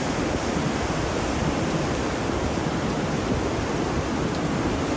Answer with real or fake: real